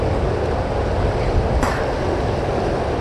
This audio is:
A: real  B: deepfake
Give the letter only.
A